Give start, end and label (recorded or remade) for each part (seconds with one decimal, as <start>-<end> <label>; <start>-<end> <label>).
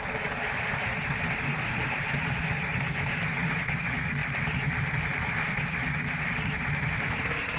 0.0-4.2 recorded; 4.2-6.6 remade; 6.6-7.6 recorded